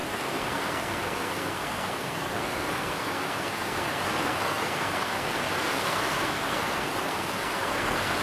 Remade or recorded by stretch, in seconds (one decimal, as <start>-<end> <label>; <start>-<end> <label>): 0.0-8.2 remade